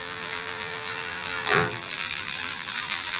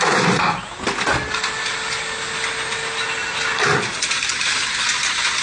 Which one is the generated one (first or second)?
first